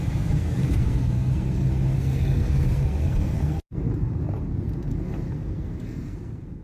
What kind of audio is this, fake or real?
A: fake